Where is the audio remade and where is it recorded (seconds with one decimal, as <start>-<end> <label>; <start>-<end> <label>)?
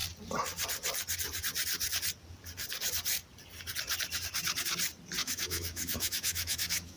0.0-5.2 recorded; 5.2-7.0 remade